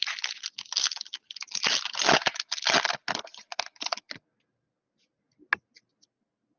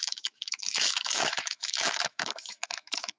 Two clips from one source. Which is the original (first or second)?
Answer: first